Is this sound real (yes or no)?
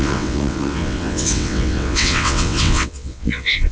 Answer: no